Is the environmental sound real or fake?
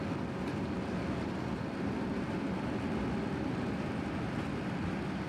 real